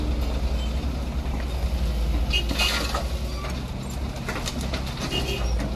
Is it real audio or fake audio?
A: real